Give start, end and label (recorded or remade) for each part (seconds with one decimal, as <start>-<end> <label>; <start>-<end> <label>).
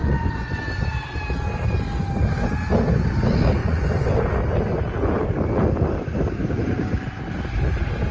0.0-0.6 remade; 0.6-3.6 recorded; 3.6-4.2 remade; 4.2-8.1 recorded